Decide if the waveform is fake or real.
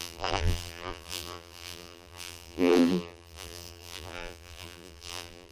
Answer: fake